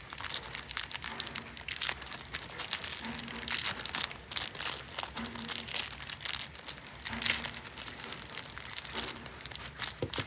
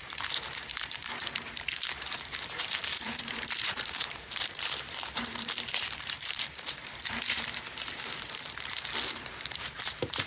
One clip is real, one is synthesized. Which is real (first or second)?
first